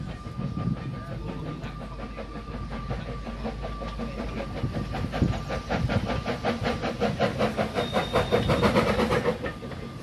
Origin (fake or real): real